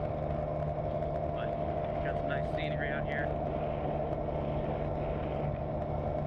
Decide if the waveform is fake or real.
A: real